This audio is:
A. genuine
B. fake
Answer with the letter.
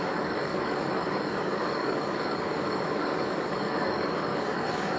B